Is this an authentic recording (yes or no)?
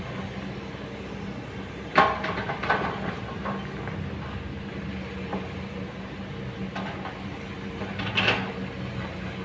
yes